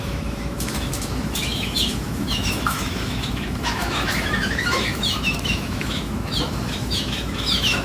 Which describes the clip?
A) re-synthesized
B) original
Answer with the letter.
A